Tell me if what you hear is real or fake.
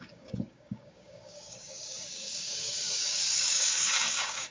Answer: fake